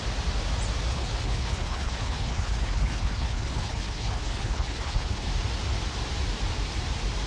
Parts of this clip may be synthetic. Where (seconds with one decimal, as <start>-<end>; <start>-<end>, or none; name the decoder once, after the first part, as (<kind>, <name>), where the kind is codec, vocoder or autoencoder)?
0.9-5.3 (codec, HILCodec)